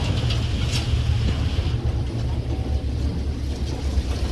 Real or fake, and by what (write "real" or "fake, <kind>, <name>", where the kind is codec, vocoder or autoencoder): real